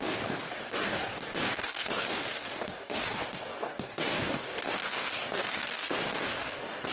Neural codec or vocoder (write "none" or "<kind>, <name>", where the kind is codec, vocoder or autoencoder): codec, DAC